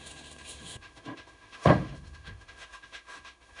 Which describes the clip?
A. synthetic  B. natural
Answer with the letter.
A